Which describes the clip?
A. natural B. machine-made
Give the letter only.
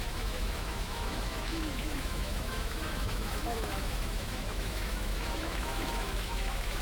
B